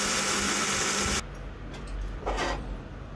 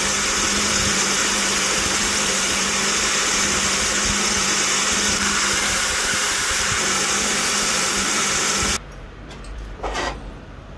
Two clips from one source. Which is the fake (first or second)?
second